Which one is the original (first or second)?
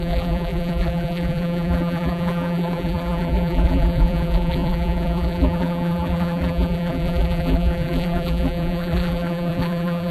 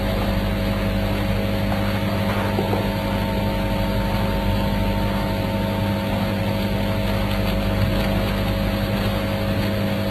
second